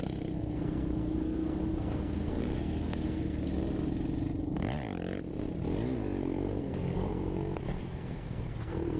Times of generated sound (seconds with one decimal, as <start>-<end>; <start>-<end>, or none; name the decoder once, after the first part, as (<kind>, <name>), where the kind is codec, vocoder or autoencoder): 0.0-3.5 (codec, SNAC); 6.2-9.0